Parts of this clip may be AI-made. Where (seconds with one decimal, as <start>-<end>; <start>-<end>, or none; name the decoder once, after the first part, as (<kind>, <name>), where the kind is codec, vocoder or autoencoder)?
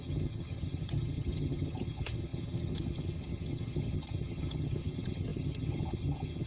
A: 0.0-6.5 (vocoder, HiFi-GAN)